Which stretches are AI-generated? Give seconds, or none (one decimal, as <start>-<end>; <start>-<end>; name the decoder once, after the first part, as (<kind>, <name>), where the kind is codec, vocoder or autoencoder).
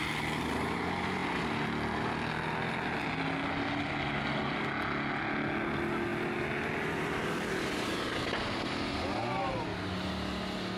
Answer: none